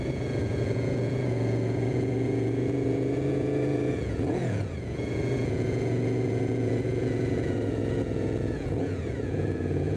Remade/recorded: remade